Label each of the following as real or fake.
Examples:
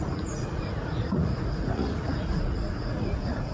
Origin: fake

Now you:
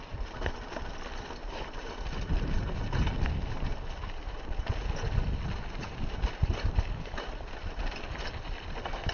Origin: real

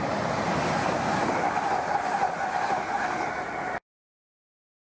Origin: real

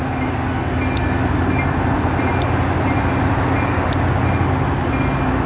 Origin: real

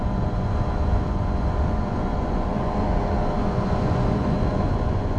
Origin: fake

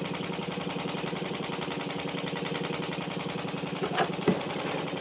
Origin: real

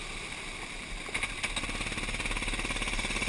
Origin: real